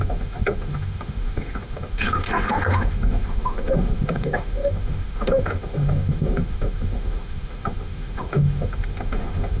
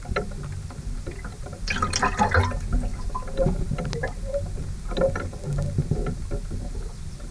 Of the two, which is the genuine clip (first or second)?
second